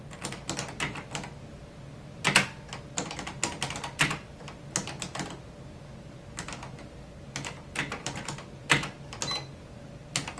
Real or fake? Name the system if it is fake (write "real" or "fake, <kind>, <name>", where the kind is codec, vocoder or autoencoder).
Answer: real